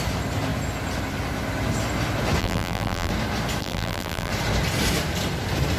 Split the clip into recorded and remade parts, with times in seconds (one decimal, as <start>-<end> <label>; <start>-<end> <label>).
0.0-2.4 recorded; 2.4-3.1 remade; 3.1-3.6 recorded; 3.6-4.3 remade; 4.3-5.8 recorded